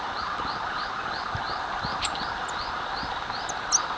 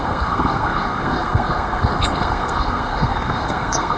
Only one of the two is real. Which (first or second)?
first